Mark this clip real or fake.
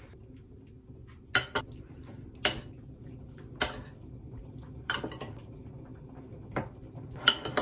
real